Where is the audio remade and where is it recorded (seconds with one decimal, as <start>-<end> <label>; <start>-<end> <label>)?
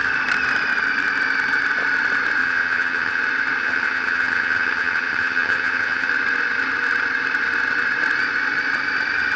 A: 0.0-2.4 recorded; 2.4-3.2 remade; 3.2-3.6 recorded; 3.6-6.1 remade; 6.1-9.4 recorded